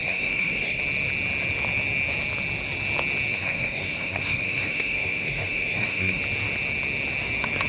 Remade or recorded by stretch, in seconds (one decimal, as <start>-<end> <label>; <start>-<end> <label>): 0.0-0.8 remade; 0.8-3.3 recorded; 3.3-6.2 remade; 6.2-7.7 recorded